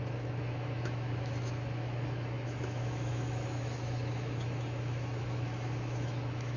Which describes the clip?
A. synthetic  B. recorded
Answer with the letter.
A